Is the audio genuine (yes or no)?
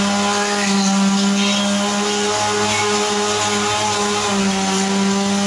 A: yes